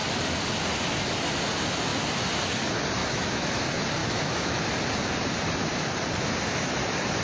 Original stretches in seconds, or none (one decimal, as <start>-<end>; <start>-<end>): 0.0-3.0; 3.6-4.0; 4.6-7.2